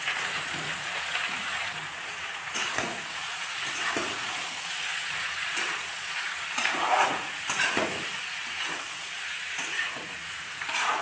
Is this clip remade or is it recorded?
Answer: remade